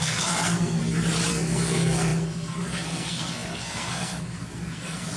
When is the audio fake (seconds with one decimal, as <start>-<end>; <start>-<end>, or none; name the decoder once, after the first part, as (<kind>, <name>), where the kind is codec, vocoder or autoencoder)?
0.0-0.8 (codec, SNAC); 1.3-5.2